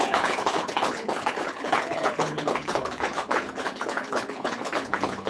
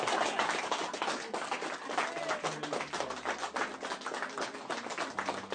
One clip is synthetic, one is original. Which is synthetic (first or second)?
first